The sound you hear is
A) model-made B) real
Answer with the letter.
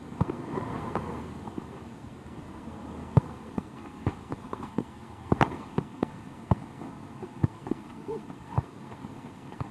A